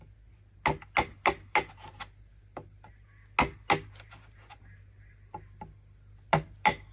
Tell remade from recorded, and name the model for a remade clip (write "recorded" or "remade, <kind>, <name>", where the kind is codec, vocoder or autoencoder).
recorded